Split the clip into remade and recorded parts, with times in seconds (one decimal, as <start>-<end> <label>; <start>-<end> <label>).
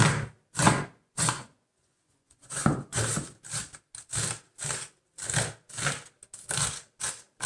0.0-0.6 recorded; 0.6-3.0 remade; 3.0-7.5 recorded